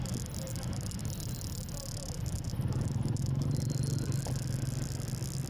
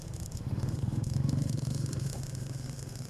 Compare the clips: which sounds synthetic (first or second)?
second